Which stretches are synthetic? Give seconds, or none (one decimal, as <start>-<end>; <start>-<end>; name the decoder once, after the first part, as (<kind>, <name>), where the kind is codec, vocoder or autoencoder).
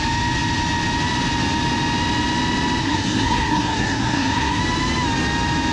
2.8-4.6 (codec, SNAC)